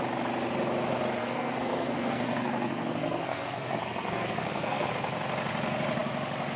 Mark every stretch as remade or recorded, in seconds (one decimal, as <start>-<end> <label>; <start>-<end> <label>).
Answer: 0.0-1.2 recorded; 1.2-4.9 remade; 4.9-6.6 recorded